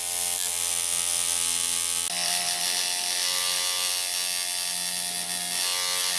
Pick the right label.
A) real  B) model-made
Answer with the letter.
A